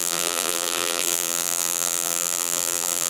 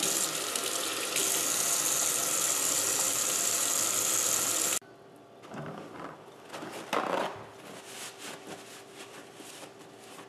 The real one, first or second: second